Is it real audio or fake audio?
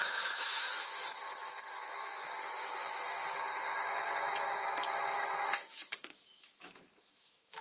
fake